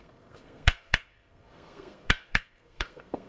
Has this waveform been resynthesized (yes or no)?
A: yes